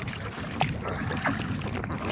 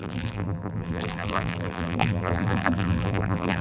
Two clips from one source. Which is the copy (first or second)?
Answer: second